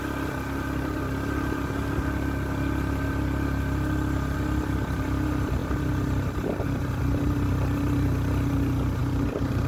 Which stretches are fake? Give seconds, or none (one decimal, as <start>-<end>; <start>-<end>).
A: none

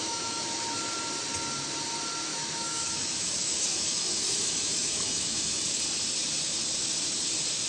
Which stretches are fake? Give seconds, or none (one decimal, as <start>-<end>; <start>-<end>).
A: 0.0-0.8; 2.3-5.8

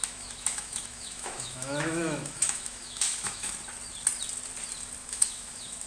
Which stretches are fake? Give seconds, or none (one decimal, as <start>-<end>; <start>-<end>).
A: 0.0-3.5; 5.0-5.9

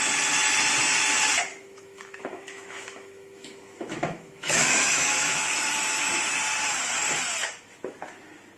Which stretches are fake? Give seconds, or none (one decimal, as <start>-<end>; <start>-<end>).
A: 1.5-6.2

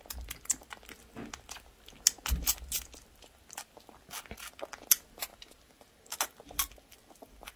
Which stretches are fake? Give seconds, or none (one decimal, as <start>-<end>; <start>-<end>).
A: none

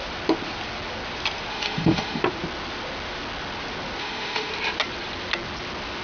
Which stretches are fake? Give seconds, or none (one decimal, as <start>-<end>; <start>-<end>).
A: 1.5-2.2; 4.0-4.5